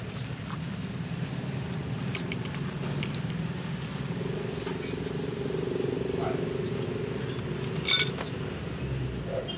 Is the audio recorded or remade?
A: recorded